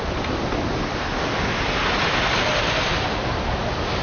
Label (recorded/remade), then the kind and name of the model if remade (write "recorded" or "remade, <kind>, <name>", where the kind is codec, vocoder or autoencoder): recorded